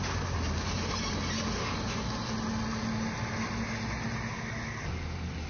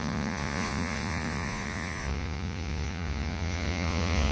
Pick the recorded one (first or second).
first